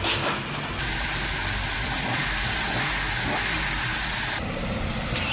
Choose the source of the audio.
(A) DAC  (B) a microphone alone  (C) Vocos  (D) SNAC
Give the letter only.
B